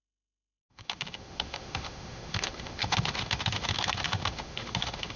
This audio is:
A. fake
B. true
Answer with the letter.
A